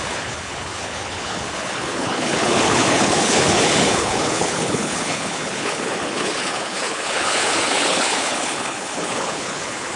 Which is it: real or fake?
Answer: fake